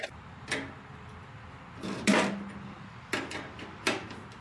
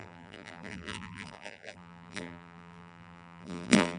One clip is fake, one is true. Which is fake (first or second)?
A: second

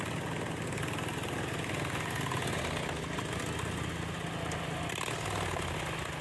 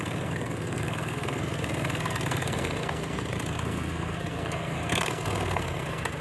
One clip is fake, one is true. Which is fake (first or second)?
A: second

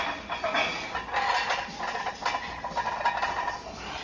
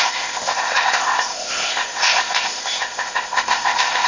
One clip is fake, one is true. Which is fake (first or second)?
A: second